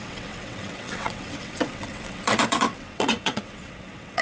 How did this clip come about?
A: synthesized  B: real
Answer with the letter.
A